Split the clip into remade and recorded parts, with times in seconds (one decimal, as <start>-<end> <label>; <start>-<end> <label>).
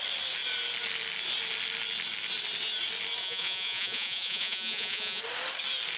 0.0-3.2 recorded; 3.2-5.2 remade; 5.2-6.0 recorded